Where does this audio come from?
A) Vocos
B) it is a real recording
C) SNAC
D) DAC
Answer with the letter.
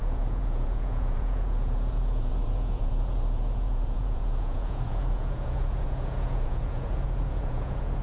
A